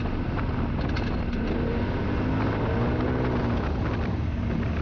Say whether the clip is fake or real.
real